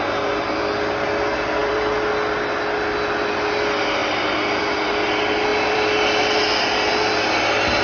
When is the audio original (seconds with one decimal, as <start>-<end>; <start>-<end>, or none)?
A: 0.0-1.6; 2.1-5.5; 6.4-7.8